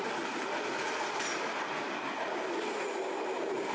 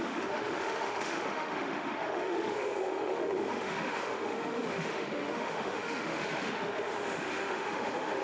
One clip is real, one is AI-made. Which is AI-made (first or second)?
second